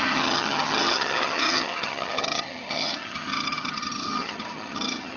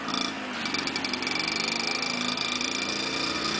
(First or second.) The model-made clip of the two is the first